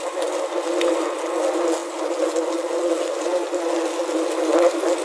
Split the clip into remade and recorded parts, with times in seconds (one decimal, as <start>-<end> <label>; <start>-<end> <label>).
0.0-5.0 recorded